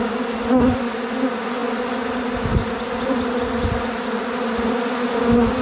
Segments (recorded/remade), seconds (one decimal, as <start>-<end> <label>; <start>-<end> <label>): 0.0-5.6 recorded